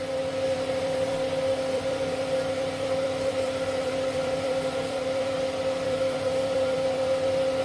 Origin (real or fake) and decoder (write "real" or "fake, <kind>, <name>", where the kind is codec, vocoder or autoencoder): fake, vocoder, BigVGAN v2